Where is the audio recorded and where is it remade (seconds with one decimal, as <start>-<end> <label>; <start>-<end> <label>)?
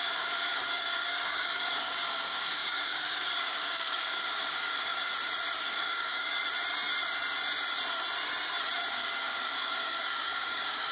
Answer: 0.0-4.9 remade; 4.9-5.6 recorded; 5.6-6.4 remade; 6.4-8.9 recorded; 8.9-10.9 remade